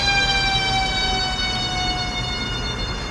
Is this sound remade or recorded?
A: recorded